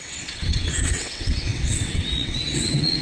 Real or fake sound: fake